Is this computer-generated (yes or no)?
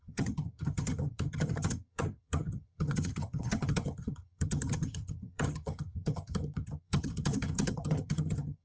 yes